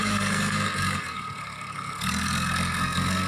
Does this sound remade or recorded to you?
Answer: remade